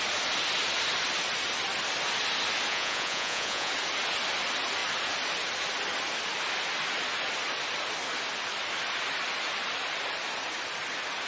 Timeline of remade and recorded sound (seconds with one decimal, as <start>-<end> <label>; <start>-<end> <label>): 0.0-2.7 recorded; 2.7-3.7 remade; 3.7-11.3 recorded